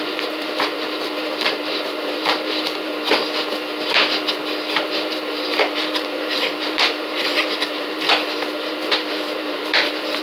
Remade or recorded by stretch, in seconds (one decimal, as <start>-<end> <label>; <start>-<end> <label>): 0.0-2.9 remade; 2.9-4.8 recorded; 4.8-8.1 remade; 8.1-8.7 recorded; 8.7-10.2 remade